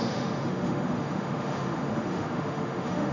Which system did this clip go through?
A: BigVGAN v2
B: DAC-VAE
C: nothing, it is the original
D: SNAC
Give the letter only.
B